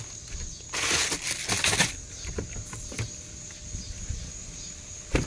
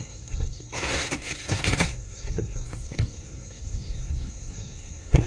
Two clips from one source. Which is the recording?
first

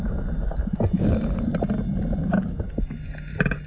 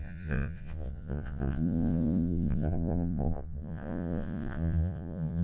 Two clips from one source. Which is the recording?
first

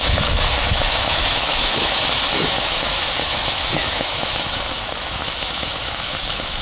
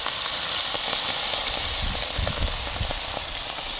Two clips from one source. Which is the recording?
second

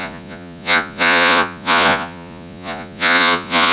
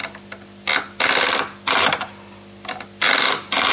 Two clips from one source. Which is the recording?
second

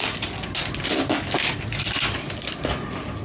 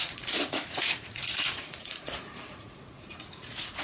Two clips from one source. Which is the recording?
first